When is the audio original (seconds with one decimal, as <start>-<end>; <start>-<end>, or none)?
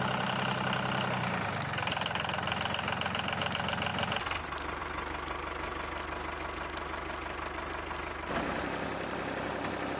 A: 0.0-10.0